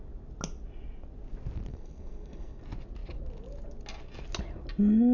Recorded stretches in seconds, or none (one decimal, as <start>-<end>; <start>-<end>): 0.0-1.7; 2.6-5.1

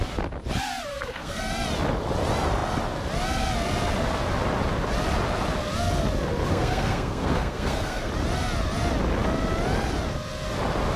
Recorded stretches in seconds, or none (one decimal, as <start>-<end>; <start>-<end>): 0.0-0.9; 1.4-6.5; 8.1-11.0